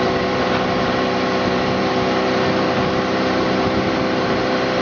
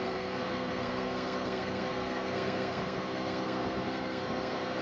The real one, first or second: first